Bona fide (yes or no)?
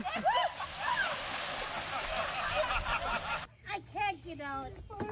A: yes